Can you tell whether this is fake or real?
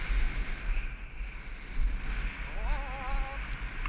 real